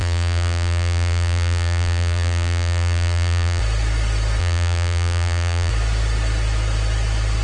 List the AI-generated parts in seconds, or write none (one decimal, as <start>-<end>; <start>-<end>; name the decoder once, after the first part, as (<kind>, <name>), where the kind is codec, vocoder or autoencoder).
0.0-3.6 (vocoder, BigVGAN v2); 4.4-5.7